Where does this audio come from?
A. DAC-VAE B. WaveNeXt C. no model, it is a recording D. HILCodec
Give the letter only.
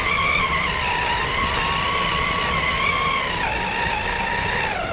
C